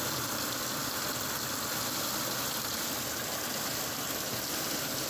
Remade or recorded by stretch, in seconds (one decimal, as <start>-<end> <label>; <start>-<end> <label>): 0.0-5.1 recorded